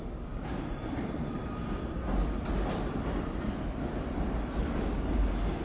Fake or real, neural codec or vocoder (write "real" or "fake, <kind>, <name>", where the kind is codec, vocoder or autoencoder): real